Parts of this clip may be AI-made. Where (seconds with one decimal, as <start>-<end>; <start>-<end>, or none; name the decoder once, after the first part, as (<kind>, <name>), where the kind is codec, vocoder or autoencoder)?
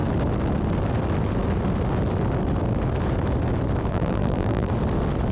3.9-4.7 (vocoder, BigVGAN v2)